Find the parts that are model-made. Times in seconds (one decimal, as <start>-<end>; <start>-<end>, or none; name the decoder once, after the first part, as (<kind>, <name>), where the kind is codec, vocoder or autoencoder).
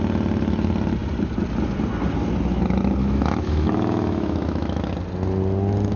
3.0-4.9 (autoencoder, DAC-VAE)